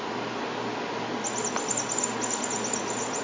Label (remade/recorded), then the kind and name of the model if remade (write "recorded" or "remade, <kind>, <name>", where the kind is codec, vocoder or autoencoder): recorded